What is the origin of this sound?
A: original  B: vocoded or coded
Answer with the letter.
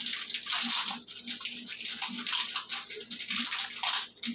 A